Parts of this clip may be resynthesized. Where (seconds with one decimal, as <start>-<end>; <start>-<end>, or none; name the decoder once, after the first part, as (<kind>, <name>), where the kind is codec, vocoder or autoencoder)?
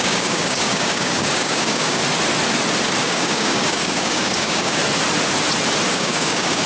0.0-2.0 (codec, DAC); 3.0-4.8; 5.9-6.7